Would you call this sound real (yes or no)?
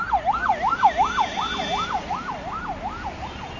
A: yes